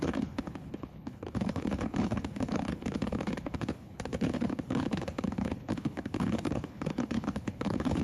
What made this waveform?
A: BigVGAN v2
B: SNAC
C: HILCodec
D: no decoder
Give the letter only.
C